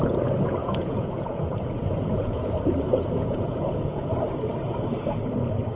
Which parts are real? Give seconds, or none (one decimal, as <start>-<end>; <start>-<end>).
0.0-0.6; 4.1-5.8